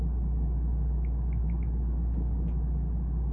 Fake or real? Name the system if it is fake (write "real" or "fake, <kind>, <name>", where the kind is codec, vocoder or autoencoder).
real